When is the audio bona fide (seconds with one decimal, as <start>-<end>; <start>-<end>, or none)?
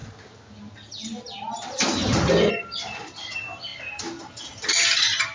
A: 0.0-5.3